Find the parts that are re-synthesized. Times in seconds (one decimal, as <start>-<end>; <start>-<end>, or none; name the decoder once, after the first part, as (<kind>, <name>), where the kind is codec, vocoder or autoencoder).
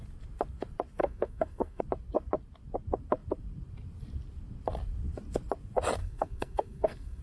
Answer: 1.0-1.8 (codec, SNAC); 6.0-7.2